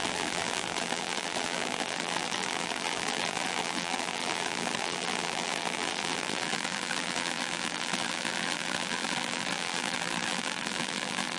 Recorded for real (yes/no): no